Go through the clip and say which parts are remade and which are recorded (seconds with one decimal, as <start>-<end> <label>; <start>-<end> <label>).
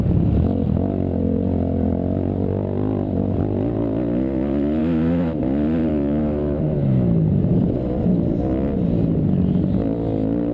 0.0-4.8 recorded; 4.8-5.4 remade; 5.4-5.9 recorded; 5.9-6.6 remade; 6.6-10.5 recorded